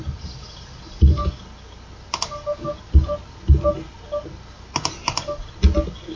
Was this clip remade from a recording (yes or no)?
no